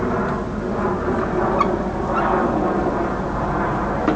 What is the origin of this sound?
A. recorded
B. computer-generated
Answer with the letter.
A